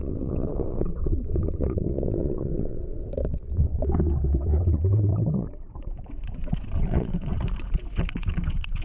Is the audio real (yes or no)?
no